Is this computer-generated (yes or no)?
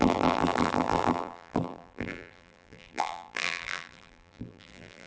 yes